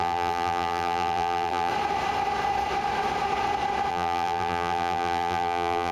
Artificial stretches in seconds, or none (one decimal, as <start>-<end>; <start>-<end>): 0.0-1.7; 3.9-5.9